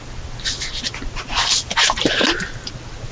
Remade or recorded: recorded